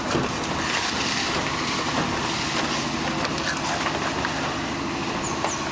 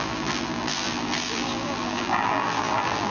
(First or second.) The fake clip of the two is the second